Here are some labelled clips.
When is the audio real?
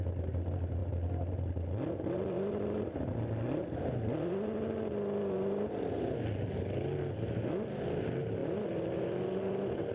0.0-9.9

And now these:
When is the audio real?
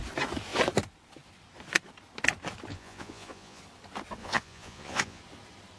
0.0-2.7; 3.6-4.2; 5.2-5.8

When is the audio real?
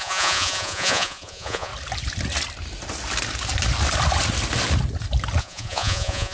1.7-5.4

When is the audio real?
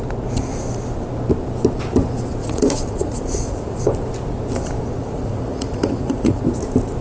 0.0-2.4; 3.8-5.0; 6.4-7.0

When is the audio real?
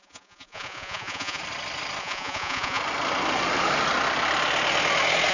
1.4-2.0; 2.8-5.3